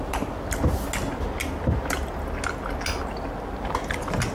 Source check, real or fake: real